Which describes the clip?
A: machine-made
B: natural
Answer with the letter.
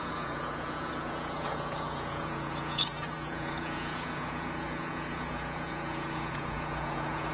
A